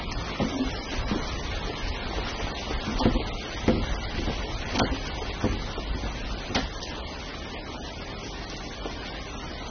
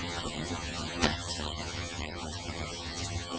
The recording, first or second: first